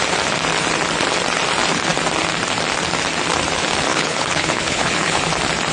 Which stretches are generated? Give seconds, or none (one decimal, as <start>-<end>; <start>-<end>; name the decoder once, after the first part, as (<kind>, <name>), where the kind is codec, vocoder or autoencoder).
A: 3.9-5.2 (codec, HILCodec)

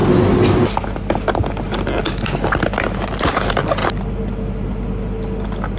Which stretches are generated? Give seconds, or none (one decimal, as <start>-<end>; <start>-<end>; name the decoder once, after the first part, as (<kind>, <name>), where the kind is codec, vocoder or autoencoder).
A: none

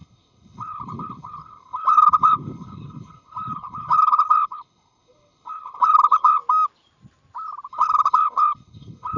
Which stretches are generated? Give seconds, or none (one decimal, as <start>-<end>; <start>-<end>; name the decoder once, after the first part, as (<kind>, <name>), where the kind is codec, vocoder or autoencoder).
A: 0.0-6.4 (codec, HILCodec); 7.7-9.2

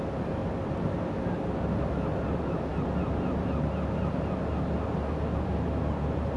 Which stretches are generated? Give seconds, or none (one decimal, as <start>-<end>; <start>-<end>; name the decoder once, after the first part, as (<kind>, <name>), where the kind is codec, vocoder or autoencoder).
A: none